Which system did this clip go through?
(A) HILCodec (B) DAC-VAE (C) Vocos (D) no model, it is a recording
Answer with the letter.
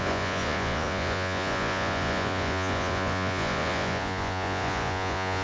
C